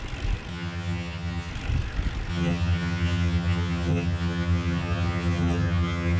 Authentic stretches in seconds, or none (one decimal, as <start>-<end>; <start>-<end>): 0.0-0.5; 1.5-2.3